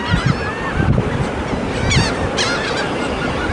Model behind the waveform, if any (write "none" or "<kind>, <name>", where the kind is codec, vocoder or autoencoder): none